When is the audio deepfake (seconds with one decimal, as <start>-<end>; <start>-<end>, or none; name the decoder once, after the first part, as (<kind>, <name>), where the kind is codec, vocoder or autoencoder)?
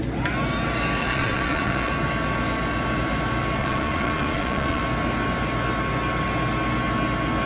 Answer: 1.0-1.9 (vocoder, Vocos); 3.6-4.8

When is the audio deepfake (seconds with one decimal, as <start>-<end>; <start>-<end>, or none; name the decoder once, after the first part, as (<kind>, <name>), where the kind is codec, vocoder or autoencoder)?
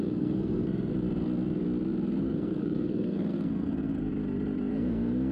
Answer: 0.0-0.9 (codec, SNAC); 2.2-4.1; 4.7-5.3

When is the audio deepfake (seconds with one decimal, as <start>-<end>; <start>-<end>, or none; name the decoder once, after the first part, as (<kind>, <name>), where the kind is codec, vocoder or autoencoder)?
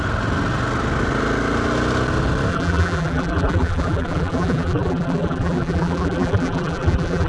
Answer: 2.5-7.3 (vocoder, BigVGAN v2)